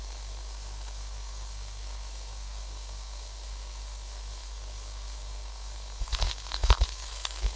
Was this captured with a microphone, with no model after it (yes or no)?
no